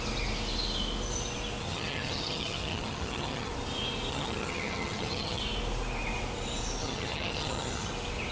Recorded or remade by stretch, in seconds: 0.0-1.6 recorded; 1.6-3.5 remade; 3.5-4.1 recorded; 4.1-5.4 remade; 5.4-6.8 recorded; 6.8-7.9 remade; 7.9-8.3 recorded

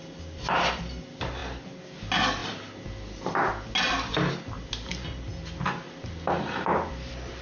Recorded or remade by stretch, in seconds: 0.0-7.4 recorded

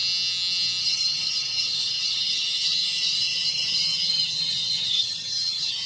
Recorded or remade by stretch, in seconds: 0.0-0.8 recorded; 0.8-5.9 remade